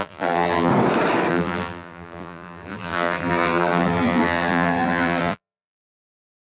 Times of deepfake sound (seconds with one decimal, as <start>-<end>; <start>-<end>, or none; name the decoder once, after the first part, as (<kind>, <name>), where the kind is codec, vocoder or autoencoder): 0.0-0.7 (vocoder, BigVGAN v2); 1.3-6.4